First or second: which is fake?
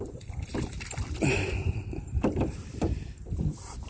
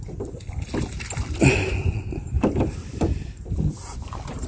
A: first